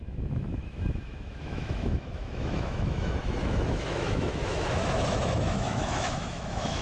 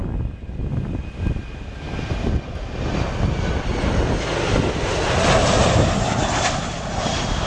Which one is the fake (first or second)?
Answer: first